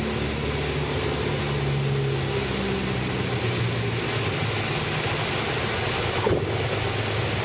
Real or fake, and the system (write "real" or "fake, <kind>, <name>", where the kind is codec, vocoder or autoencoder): real